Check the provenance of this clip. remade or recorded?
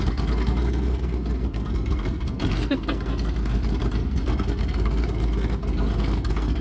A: remade